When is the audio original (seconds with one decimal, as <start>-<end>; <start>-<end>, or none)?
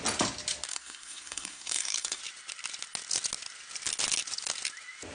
0.0-0.7; 2.2-5.1